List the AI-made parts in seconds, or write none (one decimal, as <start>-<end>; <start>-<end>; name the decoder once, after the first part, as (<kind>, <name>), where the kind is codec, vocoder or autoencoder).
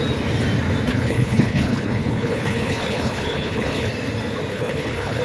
0.9-3.9 (codec, HILCodec); 4.5-5.2